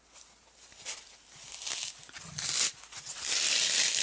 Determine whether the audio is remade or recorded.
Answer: recorded